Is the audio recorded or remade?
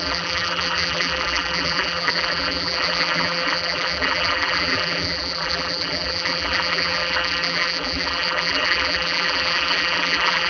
remade